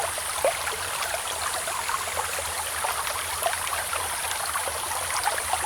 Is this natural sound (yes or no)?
yes